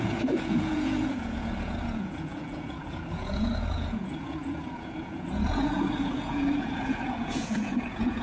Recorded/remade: remade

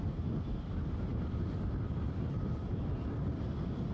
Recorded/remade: recorded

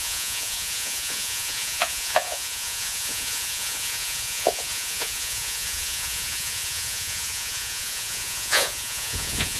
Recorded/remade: remade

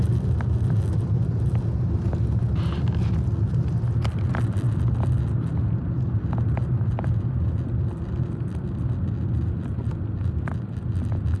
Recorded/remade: recorded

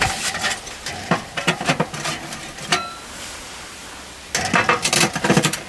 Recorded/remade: recorded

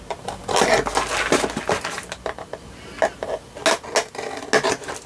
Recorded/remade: recorded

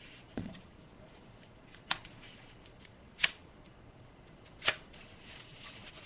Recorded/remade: remade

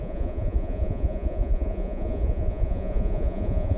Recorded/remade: remade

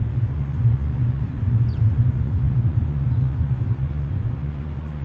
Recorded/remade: remade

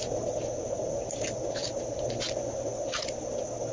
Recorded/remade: recorded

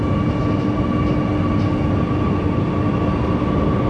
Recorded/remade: recorded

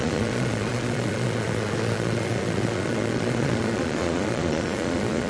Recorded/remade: remade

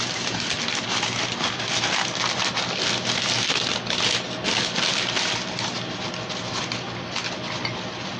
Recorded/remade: recorded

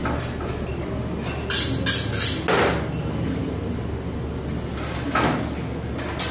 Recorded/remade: recorded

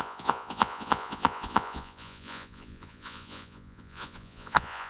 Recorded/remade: remade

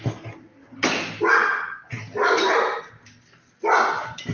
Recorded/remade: recorded